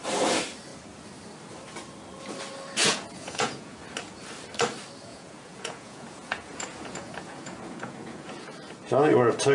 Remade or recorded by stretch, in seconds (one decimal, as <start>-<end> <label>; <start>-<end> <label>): 0.0-2.8 recorded; 2.8-3.8 remade; 3.8-5.1 recorded; 5.1-8.9 remade; 8.9-9.5 recorded